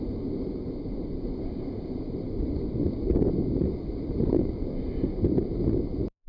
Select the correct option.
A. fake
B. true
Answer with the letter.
B